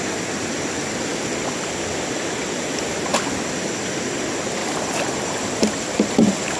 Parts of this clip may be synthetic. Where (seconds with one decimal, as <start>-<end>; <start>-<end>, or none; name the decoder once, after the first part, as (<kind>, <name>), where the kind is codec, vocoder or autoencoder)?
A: 4.6-6.1 (vocoder, BigVGAN v2)